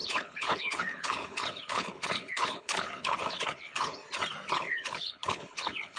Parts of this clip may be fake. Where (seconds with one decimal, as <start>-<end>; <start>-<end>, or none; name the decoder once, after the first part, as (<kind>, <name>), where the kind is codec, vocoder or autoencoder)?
0.0-4.0 (codec, HILCodec); 4.5-6.0